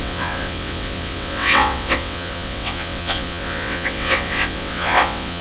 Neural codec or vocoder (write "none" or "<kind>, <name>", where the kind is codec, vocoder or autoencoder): vocoder, WaveNeXt